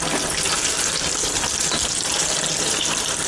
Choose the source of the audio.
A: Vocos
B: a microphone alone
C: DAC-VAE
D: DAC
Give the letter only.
B